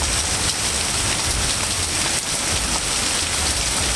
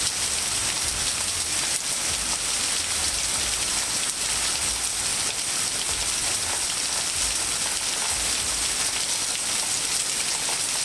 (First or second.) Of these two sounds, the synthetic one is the first